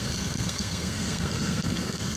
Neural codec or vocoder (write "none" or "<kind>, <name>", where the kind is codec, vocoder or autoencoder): codec, SNAC